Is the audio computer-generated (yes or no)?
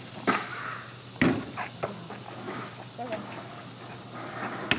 no